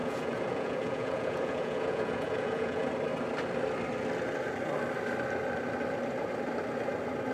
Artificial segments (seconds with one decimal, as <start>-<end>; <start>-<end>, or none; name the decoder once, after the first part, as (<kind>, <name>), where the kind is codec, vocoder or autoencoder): 0.0-2.9 (vocoder, Vocos)